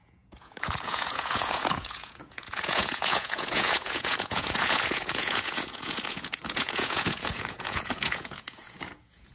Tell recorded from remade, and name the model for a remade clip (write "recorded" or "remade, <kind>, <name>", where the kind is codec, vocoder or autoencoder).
remade, vocoder, Vocos